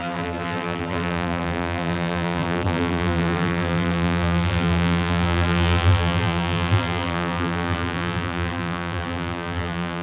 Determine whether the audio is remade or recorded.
remade